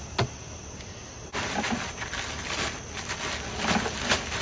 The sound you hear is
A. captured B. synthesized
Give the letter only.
A